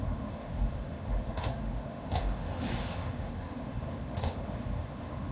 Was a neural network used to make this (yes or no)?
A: yes